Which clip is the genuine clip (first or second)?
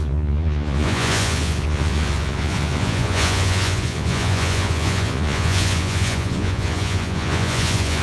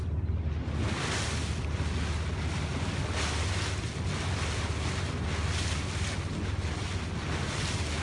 second